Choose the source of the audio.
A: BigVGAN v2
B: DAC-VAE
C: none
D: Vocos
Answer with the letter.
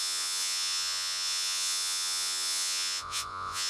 D